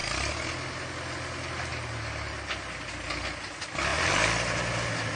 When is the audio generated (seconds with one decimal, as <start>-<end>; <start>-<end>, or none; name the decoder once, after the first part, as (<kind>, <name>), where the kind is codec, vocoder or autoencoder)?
none